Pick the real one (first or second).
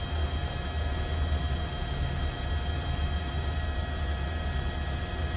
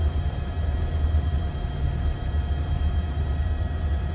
first